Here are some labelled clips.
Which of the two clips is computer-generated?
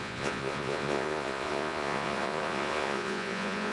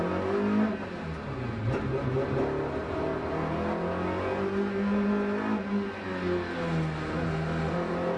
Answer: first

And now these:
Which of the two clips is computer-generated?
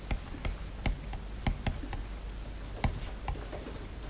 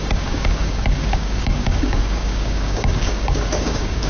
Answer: second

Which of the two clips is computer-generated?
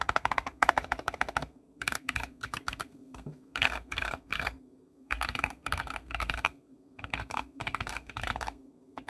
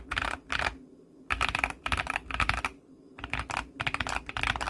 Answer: first